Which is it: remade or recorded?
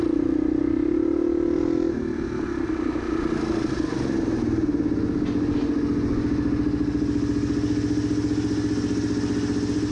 recorded